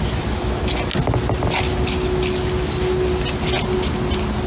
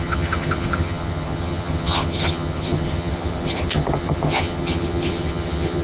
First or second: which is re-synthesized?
second